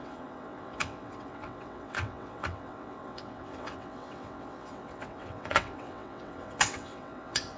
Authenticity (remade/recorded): remade